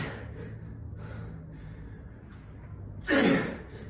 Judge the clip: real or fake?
real